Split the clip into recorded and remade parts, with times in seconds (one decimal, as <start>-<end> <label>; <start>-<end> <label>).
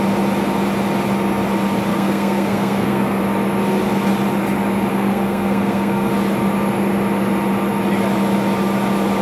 0.0-1.9 recorded; 1.9-3.2 remade; 3.2-4.9 recorded; 4.9-6.1 remade; 6.1-9.2 recorded